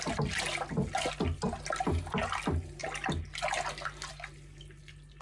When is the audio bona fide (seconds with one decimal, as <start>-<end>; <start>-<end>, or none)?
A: 0.0-5.2